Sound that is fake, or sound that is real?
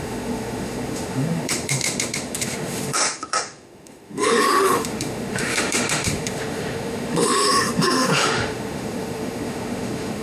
fake